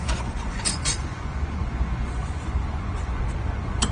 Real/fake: fake